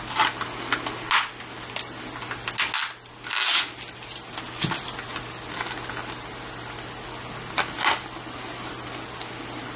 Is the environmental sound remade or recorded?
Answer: recorded